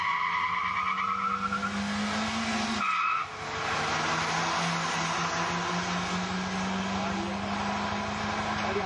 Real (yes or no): yes